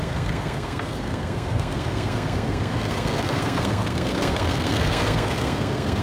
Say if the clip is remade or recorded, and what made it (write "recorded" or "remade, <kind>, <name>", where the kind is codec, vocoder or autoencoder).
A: remade, codec, SNAC